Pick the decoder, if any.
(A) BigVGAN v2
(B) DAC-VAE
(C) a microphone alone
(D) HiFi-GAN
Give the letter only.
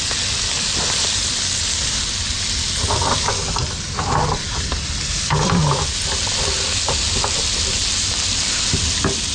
C